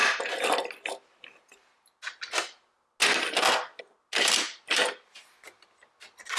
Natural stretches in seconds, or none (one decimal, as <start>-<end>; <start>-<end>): 0.0-6.4